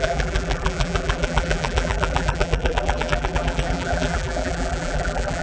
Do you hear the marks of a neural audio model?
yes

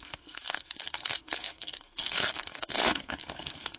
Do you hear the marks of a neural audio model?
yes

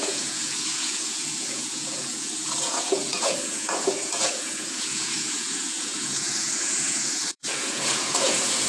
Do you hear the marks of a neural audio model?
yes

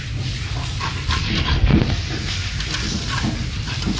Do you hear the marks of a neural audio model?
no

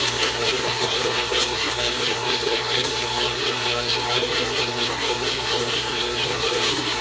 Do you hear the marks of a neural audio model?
yes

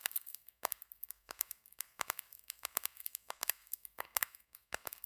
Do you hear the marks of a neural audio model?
yes